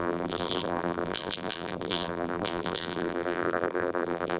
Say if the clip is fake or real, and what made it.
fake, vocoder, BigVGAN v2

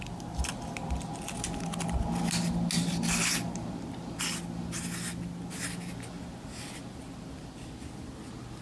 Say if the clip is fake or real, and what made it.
real